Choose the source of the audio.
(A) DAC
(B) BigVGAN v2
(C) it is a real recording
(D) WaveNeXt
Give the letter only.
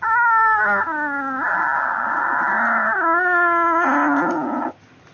C